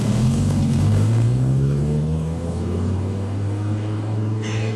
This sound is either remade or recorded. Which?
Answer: remade